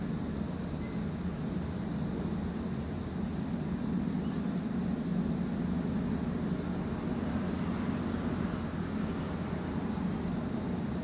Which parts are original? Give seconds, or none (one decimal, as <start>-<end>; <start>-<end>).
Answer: 0.0-11.0

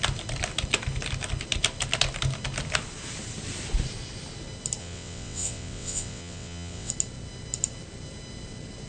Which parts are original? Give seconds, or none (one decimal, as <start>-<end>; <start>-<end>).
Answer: 0.0-4.8; 6.9-8.9

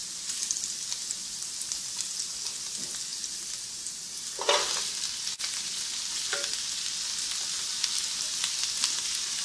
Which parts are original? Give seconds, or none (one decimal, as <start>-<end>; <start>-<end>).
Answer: 0.0-9.4

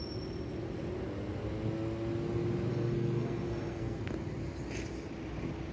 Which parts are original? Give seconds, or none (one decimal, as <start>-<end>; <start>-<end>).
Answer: 0.0-2.7; 4.0-5.7